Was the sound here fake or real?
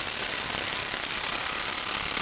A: real